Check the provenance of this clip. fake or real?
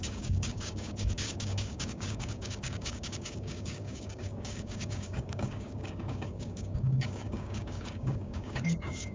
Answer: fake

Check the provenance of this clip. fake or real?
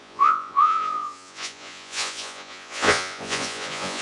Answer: fake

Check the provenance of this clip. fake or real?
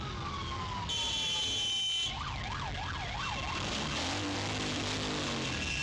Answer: real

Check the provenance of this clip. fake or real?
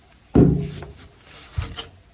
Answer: real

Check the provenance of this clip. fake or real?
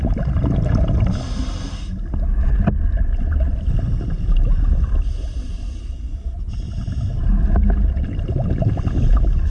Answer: real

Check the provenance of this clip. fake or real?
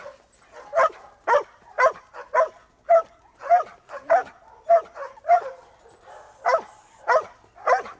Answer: real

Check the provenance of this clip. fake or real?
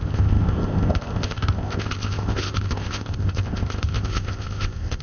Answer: fake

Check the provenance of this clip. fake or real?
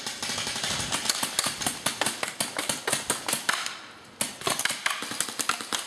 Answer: real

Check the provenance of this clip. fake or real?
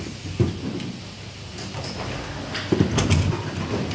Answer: real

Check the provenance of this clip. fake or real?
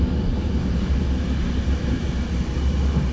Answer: real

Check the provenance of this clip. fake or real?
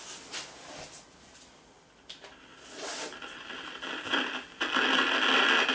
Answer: real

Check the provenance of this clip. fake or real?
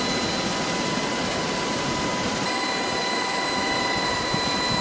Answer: real